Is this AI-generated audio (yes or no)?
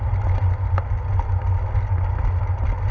no